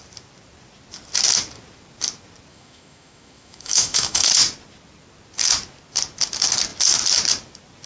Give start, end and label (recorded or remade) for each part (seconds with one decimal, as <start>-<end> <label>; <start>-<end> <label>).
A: 0.0-2.5 recorded; 2.5-4.3 remade; 4.3-7.9 recorded

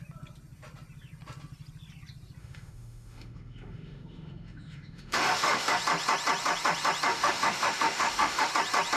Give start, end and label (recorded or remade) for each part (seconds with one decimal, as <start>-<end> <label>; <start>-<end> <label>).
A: 0.0-2.4 recorded; 2.4-5.8 remade; 5.8-7.1 recorded; 7.1-8.5 remade; 8.5-9.0 recorded

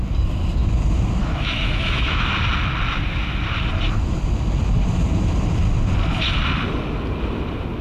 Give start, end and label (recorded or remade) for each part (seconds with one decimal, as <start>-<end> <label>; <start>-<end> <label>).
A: 0.0-1.2 recorded; 1.2-2.3 remade; 2.3-7.8 recorded